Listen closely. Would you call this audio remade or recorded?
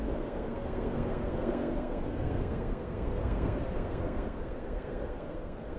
remade